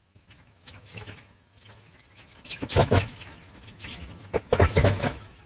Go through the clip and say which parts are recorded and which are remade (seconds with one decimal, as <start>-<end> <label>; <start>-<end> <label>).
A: 0.0-5.5 remade